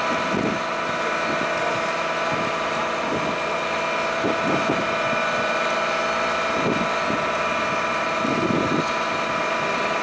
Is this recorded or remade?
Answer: recorded